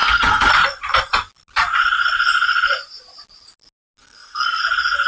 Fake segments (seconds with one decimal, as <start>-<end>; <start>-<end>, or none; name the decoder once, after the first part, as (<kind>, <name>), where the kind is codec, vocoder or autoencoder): 0.0-0.5 (codec, SNAC); 4.0-4.6